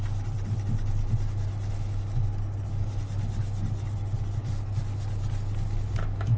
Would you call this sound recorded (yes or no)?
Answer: yes